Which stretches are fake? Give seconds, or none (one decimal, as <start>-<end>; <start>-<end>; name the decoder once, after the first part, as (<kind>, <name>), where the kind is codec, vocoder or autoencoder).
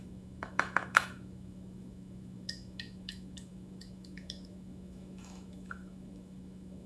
0.0-6.9 (autoencoder, DAC-VAE)